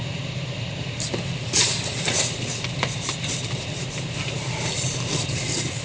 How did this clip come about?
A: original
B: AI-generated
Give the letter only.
A